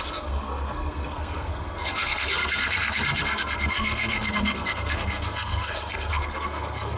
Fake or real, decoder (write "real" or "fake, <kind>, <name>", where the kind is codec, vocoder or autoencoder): fake, codec, SNAC